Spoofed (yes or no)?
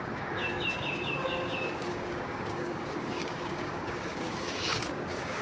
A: yes